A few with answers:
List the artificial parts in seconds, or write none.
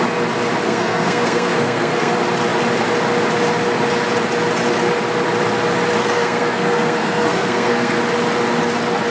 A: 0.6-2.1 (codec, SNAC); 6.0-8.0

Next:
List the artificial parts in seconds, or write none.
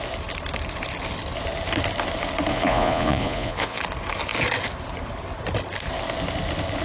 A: 2.5-3.8 (vocoder, Vocos)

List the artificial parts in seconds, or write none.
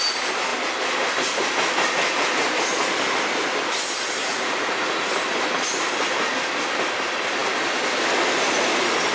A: 4.2-5.1 (vocoder, Vocos)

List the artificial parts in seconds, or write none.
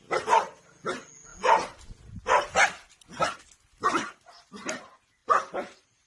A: none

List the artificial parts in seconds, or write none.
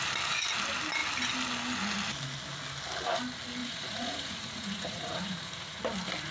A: 3.6-5.8 (vocoder, Vocos)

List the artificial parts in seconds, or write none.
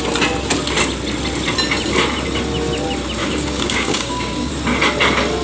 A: 3.2-4.5 (codec, DAC)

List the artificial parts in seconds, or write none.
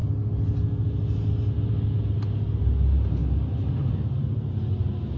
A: none